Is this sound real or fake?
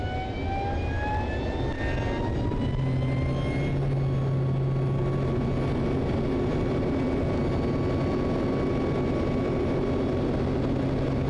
real